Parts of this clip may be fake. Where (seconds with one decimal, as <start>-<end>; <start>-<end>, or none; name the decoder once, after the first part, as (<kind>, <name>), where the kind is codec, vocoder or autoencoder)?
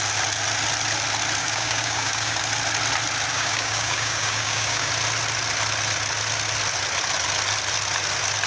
1.4-2.4 (codec, DAC); 3.3-4.9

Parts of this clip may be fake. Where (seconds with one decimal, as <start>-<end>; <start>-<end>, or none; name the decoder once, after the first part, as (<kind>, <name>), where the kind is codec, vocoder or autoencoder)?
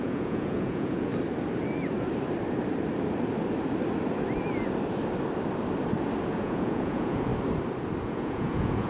0.0-1.1 (vocoder, Vocos); 6.2-7.3; 8.0-8.9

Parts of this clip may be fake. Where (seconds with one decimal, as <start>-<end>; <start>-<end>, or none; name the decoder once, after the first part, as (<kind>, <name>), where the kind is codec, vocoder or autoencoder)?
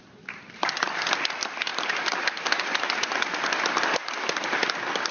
none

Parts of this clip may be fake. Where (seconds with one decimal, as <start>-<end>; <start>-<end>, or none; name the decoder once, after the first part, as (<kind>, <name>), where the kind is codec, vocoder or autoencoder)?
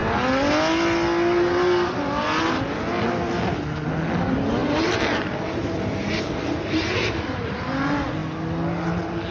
4.6-7.7 (vocoder, BigVGAN v2)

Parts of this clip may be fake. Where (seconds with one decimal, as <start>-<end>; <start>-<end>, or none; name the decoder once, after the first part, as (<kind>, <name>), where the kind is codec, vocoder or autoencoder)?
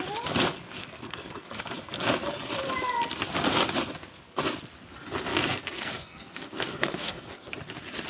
0.8-1.6 (codec, SNAC); 5.3-7.5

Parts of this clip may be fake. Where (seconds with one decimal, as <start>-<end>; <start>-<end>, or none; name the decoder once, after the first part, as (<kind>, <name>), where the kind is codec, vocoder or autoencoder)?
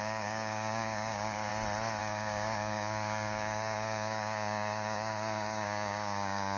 0.0-1.5 (codec, DAC); 2.0-6.6